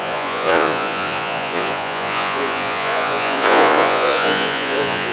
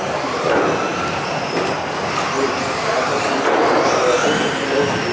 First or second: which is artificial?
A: first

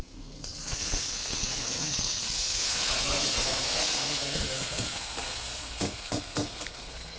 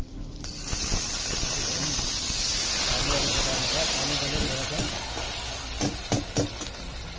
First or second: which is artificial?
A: first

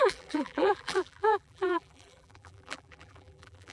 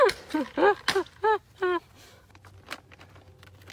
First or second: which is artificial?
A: first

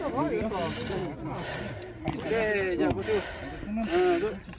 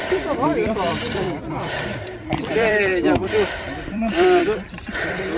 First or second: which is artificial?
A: second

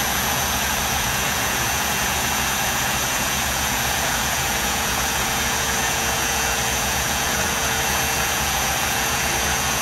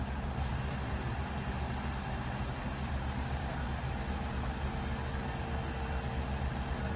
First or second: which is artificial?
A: first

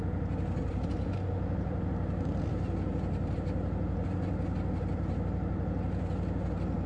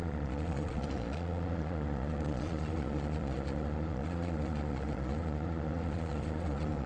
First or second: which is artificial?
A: second